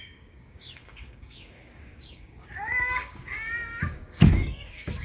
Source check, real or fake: fake